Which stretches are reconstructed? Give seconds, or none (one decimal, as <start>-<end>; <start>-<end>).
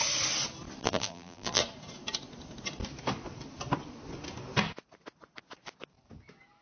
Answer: 0.8-1.6